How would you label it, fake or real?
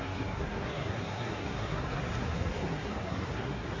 fake